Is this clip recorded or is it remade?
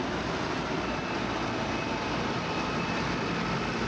recorded